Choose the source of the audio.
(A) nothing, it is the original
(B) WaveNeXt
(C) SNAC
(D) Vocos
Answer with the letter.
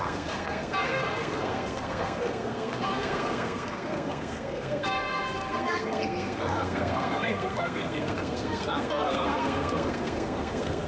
C